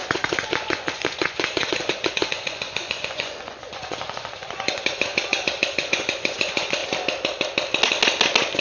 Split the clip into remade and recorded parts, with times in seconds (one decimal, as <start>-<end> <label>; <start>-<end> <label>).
0.0-6.8 remade; 6.8-8.6 recorded